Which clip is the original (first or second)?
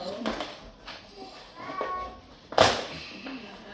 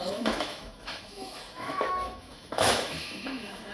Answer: first